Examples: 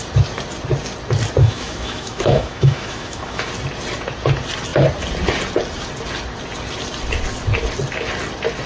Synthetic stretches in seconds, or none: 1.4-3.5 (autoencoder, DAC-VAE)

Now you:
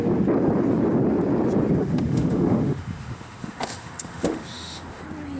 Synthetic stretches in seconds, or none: 1.8-5.0 (autoencoder, DAC-VAE)

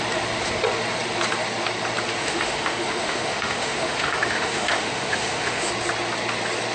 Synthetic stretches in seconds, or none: 2.2-5.7 (autoencoder, DAC-VAE)

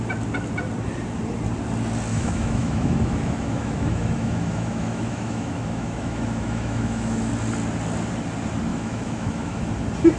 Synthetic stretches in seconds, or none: 2.1-7.3 (autoencoder, DAC-VAE); 8.7-9.6

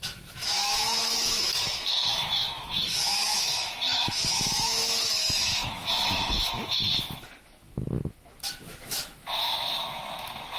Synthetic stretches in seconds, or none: 0.0-6.8 (autoencoder, DAC-VAE); 7.4-10.6

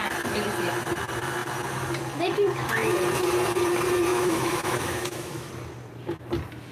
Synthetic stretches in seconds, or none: 4.1-5.5 (autoencoder, DAC-VAE)